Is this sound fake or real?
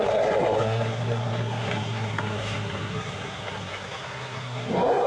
fake